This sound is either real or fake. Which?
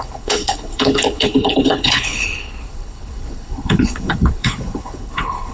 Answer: fake